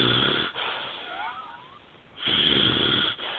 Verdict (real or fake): real